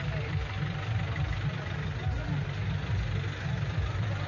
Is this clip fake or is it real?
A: real